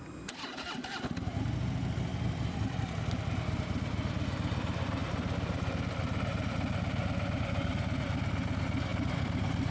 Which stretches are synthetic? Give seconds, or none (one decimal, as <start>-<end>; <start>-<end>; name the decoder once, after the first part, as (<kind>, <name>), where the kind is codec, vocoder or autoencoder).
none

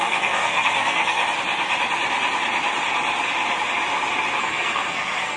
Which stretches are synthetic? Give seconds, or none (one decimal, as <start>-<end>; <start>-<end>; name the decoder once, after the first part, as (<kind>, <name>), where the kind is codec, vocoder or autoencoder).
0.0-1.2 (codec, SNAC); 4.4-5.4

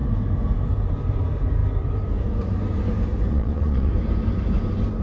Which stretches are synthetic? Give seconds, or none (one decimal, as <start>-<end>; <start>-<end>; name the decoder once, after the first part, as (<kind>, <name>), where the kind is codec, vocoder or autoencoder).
3.3-3.9 (vocoder, Vocos)

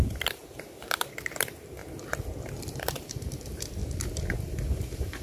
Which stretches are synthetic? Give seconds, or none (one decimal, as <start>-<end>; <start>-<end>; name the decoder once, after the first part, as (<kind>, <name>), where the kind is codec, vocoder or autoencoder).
0.0-1.8 (vocoder, BigVGAN v2); 2.6-3.8; 4.4-5.2

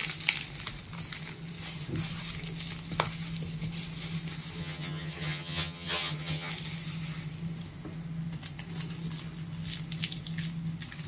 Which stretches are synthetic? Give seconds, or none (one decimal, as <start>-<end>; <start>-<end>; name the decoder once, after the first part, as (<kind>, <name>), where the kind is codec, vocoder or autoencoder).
4.6-6.5 (vocoder, HiFi-GAN)

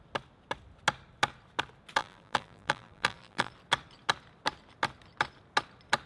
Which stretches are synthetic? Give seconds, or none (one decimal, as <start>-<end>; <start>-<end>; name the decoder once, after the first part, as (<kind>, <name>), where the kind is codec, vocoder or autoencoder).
2.0-3.5 (vocoder, BigVGAN v2)

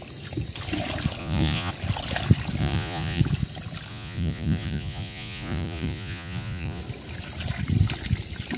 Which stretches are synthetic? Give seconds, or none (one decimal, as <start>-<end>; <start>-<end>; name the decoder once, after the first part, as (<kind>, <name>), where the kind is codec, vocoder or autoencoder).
1.2-1.7 (vocoder, Vocos); 2.6-3.2; 3.9-6.8